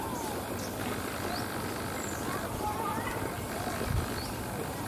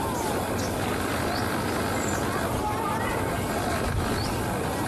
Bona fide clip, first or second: second